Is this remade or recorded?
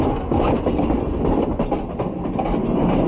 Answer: recorded